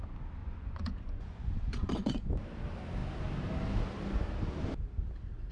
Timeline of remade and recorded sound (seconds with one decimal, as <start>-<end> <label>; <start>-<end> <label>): 0.0-0.4 recorded; 0.4-2.3 remade; 2.3-5.5 recorded